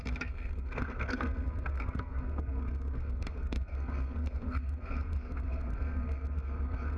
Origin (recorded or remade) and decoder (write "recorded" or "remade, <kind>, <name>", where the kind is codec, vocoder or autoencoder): remade, codec, SNAC